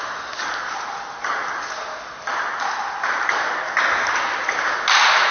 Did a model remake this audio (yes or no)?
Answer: no